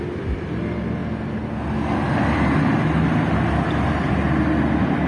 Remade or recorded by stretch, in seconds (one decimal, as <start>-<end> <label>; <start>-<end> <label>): 0.0-5.1 recorded